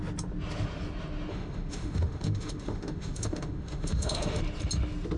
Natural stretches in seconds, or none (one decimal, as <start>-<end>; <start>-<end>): 0.0-1.3; 4.4-5.2

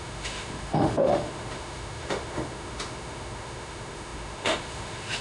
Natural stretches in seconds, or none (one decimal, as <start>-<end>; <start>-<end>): none

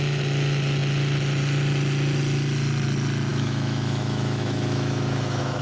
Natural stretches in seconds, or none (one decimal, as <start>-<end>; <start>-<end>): 0.0-3.3

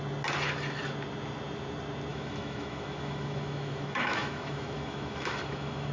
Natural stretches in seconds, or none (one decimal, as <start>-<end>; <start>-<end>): 0.0-2.1

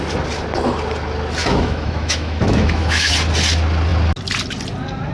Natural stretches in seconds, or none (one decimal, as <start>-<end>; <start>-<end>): 0.0-1.4; 3.1-5.1

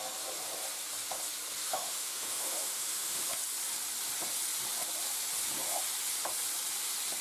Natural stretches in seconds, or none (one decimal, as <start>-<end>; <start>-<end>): 0.0-1.6; 3.3-7.2

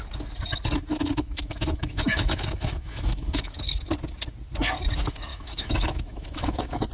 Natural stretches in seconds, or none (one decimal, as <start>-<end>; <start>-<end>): 0.0-0.9; 3.6-5.3